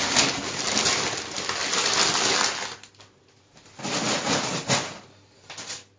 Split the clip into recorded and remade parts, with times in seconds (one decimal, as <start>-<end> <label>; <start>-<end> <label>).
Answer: 0.0-6.0 recorded